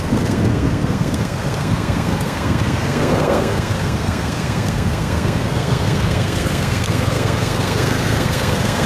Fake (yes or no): yes